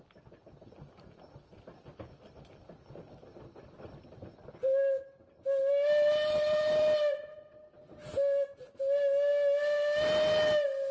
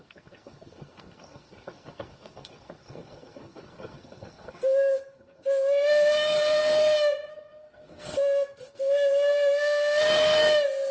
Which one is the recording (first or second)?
first